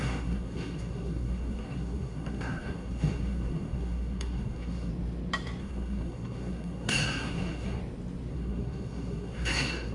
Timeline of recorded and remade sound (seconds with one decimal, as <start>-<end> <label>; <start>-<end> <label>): 0.0-4.9 remade; 4.9-5.6 recorded; 5.6-7.8 remade; 7.8-8.3 recorded; 8.3-9.9 remade